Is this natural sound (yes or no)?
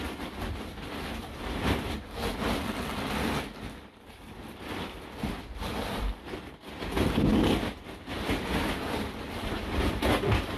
yes